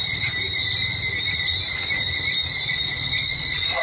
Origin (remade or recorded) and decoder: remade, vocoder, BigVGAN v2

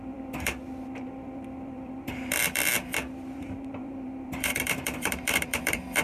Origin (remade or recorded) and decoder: remade, vocoder, BigVGAN v2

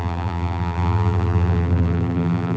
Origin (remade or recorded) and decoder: remade, vocoder, BigVGAN v2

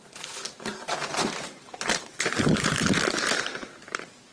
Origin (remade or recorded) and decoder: remade, vocoder, BigVGAN v2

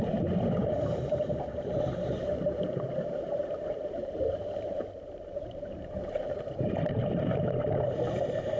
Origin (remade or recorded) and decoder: remade, vocoder, BigVGAN v2